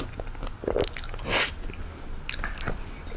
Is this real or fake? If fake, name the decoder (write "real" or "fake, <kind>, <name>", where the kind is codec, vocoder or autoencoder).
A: real